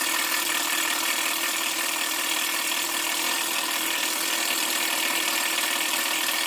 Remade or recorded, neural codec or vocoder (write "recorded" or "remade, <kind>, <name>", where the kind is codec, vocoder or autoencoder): remade, vocoder, BigVGAN v2